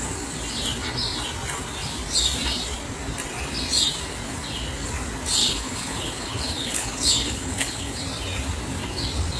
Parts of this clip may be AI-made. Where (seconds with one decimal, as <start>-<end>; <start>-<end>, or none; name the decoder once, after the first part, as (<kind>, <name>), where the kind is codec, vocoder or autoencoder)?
5.4-8.0 (codec, HILCodec)